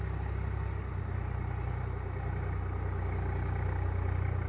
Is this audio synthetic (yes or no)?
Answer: no